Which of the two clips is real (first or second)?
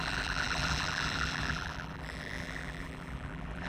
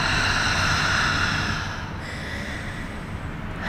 second